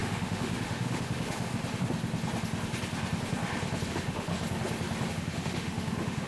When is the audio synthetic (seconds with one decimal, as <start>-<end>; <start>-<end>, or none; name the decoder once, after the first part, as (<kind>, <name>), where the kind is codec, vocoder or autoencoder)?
0.0-1.5 (autoencoder, DAC-VAE); 3.9-4.3; 5.1-6.3